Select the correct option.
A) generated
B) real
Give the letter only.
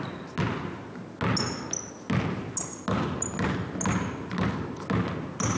B